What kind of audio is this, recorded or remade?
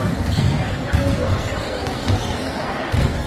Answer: remade